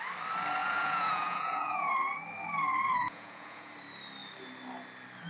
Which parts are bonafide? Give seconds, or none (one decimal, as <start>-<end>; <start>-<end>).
0.0-0.6; 1.9-3.0; 3.7-5.3